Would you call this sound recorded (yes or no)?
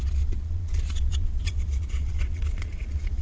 no